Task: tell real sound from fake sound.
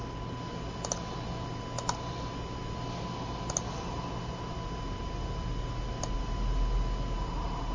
real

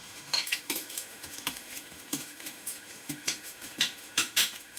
fake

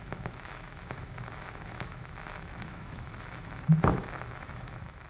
fake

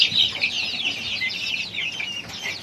real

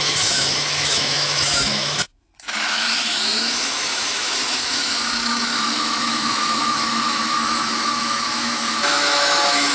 fake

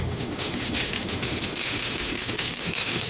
fake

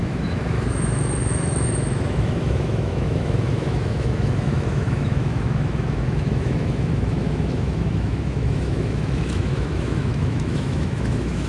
fake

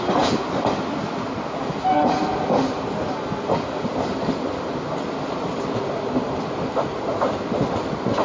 real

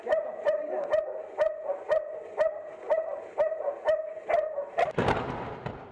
real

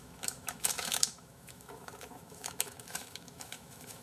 fake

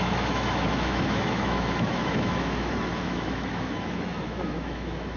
fake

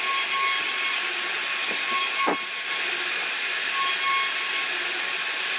real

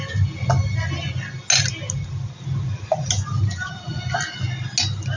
real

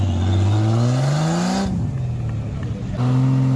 real